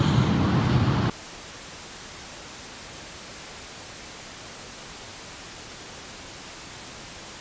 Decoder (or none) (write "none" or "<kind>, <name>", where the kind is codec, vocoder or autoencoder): none